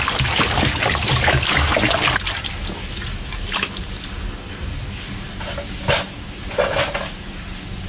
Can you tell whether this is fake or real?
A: real